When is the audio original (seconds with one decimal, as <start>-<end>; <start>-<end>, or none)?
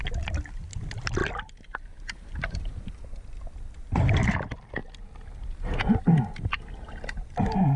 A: 0.0-7.8